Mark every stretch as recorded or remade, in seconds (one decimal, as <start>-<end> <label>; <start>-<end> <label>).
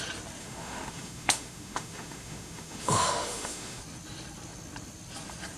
0.0-0.4 recorded; 0.4-3.8 remade; 3.8-5.6 recorded